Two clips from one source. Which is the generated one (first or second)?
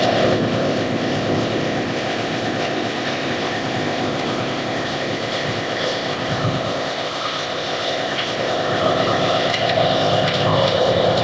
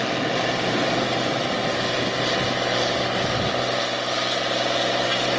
first